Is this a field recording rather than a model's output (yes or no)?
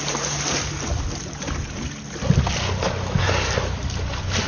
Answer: yes